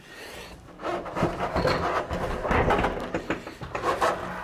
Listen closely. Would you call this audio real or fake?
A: real